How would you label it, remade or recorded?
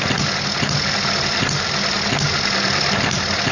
recorded